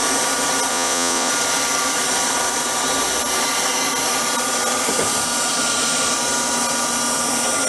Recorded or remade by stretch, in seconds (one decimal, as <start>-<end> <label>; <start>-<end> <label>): 0.0-0.7 recorded; 0.7-1.3 remade; 1.3-7.7 recorded